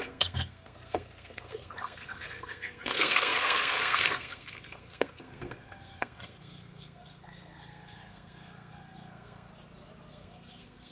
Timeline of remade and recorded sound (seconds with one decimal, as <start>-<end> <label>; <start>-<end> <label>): 0.0-9.5 remade; 9.5-10.1 recorded; 10.1-10.9 remade

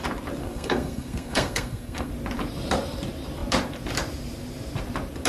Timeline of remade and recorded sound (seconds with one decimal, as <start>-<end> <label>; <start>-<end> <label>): 0.0-0.4 recorded; 0.4-2.1 remade; 2.1-5.3 recorded

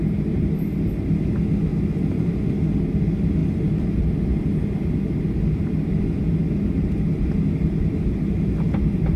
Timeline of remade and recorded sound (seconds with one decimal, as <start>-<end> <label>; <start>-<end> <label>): 0.0-1.7 recorded; 1.7-2.6 remade; 2.6-9.2 recorded